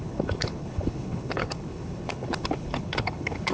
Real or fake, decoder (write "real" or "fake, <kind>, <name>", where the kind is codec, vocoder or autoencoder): fake, codec, HILCodec